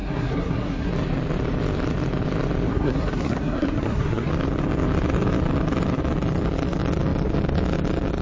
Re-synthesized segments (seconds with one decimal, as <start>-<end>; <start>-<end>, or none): 0.0-0.9; 2.7-4.3

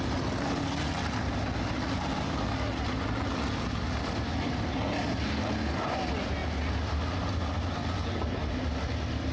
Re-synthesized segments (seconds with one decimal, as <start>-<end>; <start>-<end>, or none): none

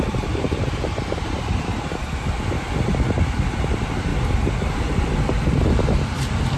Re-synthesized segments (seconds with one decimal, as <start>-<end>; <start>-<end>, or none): 0.0-1.7; 3.3-4.1